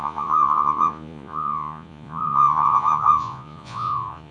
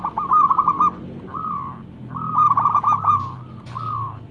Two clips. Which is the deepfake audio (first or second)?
first